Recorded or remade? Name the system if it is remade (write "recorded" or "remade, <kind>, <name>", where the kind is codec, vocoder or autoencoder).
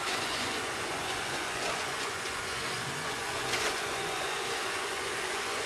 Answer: remade, vocoder, Vocos